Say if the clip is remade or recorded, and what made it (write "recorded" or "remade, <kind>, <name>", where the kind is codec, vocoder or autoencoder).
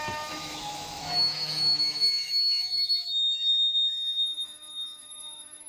remade, autoencoder, DAC-VAE